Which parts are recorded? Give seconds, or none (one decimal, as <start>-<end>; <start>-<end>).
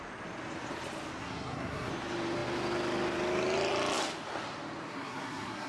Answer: 0.0-1.2; 1.9-4.9